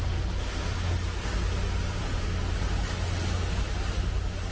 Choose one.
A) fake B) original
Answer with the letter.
B